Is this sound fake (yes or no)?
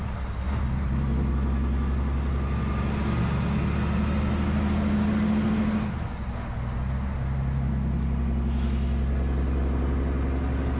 no